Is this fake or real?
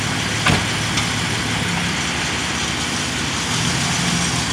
real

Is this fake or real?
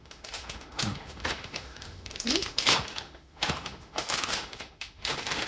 fake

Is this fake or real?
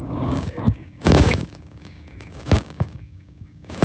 fake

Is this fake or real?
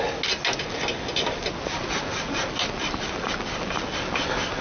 real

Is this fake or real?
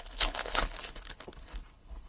fake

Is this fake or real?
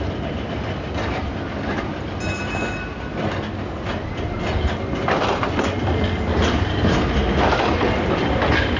real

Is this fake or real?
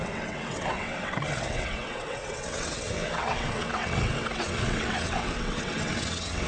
fake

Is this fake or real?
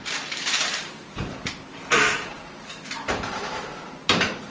fake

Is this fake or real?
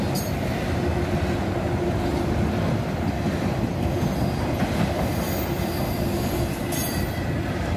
real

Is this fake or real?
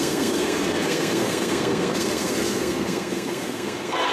fake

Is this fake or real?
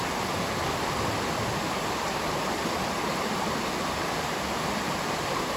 real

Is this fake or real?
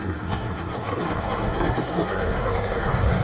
fake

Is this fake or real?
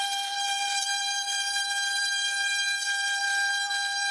fake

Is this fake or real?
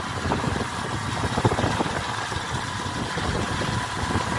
real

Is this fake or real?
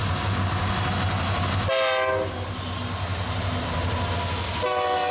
real